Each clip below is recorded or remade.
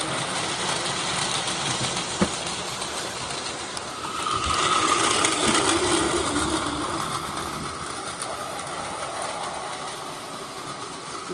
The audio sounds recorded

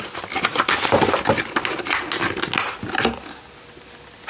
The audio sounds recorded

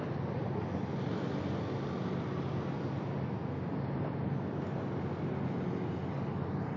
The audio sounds recorded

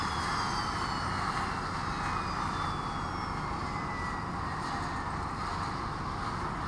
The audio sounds recorded